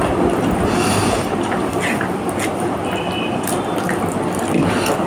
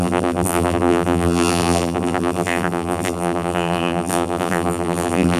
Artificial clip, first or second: second